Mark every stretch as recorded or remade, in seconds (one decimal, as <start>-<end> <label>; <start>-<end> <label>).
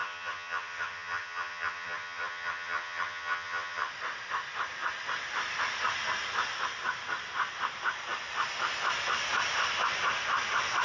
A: 0.0-3.9 remade; 3.9-10.8 recorded